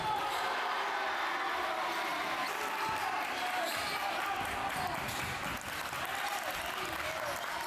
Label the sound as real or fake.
real